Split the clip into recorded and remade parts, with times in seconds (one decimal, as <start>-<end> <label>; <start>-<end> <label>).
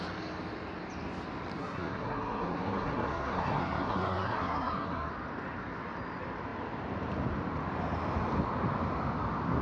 0.0-1.6 recorded; 1.6-5.1 remade; 5.1-9.6 recorded